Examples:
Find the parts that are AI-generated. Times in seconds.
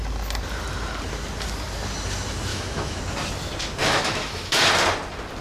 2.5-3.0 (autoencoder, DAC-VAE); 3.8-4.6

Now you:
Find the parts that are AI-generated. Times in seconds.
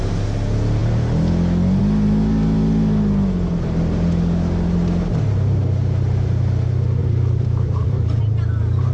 7.0-8.2 (vocoder, BigVGAN v2)